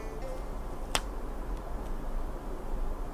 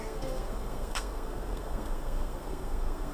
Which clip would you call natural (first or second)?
first